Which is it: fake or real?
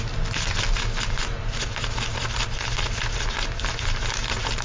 real